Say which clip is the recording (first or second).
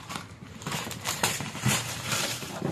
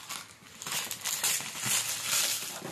second